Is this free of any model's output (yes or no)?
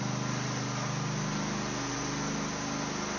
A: yes